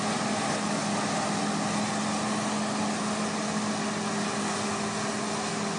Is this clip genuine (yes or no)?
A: yes